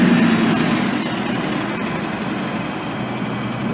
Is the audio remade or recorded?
recorded